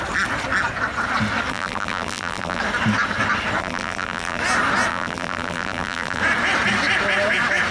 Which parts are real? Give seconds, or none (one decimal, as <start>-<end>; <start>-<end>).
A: 0.0-1.5; 2.6-3.6; 4.4-4.9; 6.2-7.7